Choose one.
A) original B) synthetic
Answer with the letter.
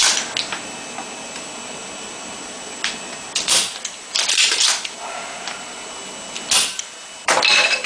B